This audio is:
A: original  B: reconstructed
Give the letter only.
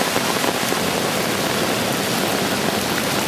A